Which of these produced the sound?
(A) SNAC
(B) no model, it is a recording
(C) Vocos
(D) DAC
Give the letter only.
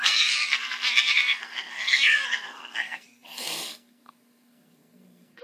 A